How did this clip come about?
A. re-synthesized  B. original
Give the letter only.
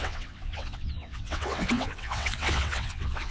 A